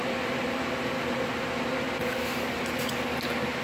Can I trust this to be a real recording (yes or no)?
yes